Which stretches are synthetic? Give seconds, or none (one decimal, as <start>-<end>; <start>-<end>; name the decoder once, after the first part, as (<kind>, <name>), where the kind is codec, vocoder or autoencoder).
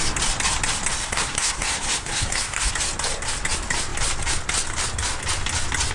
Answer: 1.0-2.7 (codec, SNAC)